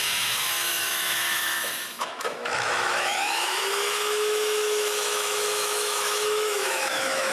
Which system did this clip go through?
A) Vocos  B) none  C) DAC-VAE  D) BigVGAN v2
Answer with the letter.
C